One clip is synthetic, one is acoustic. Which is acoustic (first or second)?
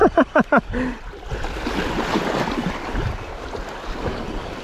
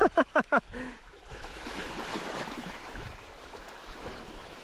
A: first